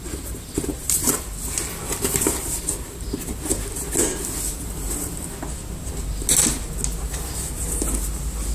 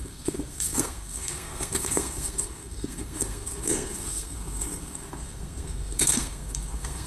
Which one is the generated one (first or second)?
second